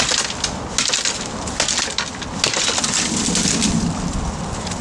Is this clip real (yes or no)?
yes